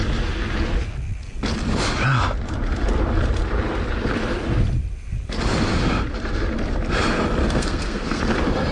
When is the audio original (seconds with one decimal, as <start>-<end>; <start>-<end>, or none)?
0.0-7.4; 8.2-8.7